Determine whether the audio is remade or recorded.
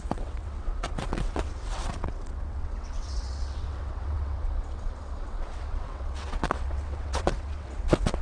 remade